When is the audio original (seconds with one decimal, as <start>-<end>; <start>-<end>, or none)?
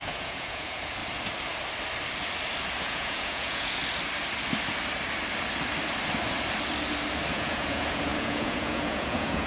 1.0-2.8; 3.8-7.3